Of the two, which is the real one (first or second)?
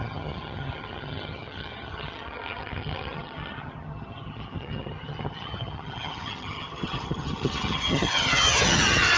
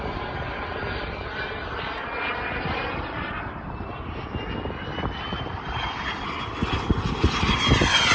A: second